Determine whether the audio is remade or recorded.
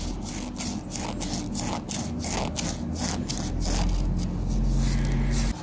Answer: recorded